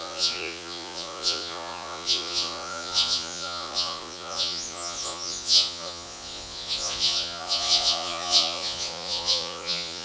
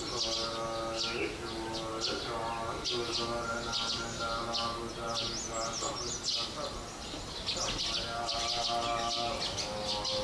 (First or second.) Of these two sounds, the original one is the second